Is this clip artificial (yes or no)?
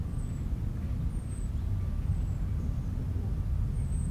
no